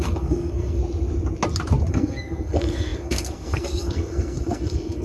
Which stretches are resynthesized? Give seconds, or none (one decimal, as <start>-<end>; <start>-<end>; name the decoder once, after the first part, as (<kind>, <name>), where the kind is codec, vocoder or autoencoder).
0.0-0.8 (codec, SNAC); 1.9-5.0